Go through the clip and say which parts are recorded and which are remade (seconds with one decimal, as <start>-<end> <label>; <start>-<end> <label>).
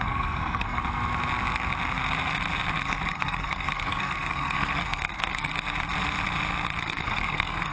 0.0-0.8 remade; 0.8-3.1 recorded; 3.1-5.5 remade; 5.5-6.8 recorded; 6.8-7.7 remade